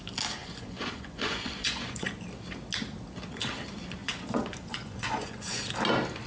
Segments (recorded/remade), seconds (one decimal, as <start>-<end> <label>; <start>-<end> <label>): 0.0-0.4 recorded; 0.4-2.1 remade; 2.1-4.0 recorded; 4.0-5.6 remade; 5.6-6.3 recorded